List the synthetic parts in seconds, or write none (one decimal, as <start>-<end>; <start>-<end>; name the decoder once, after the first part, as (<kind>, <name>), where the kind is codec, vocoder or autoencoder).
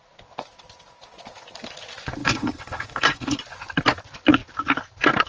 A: 2.2-3.4 (codec, DAC)